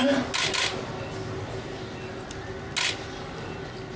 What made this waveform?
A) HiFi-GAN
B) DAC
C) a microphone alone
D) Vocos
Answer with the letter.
C